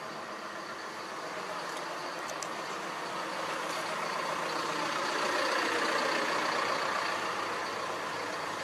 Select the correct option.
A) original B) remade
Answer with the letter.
A